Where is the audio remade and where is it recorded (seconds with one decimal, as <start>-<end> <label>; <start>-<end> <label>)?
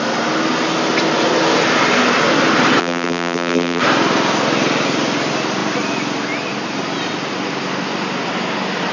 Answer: 0.0-2.8 recorded; 2.8-3.8 remade; 3.8-8.9 recorded